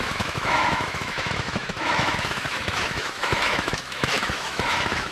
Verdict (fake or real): fake